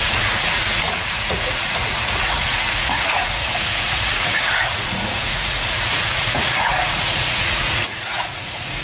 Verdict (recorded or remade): remade